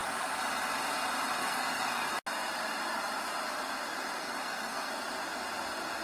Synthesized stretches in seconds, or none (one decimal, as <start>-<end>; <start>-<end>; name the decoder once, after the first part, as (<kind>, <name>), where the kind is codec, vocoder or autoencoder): 1.4-2.1 (codec, SNAC); 4.2-4.9